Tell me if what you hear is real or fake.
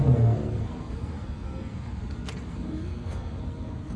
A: fake